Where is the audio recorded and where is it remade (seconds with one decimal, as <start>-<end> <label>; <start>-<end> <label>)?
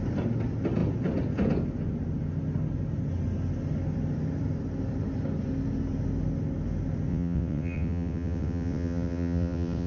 0.0-7.1 recorded; 7.1-9.9 remade